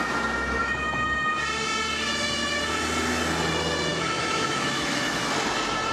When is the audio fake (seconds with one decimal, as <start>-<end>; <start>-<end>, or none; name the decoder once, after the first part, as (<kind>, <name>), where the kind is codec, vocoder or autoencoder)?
0.6-1.3 (autoencoder, DAC-VAE); 3.9-5.2